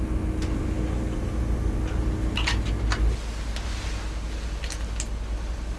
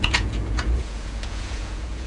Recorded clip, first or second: first